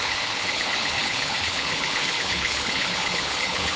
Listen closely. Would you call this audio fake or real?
fake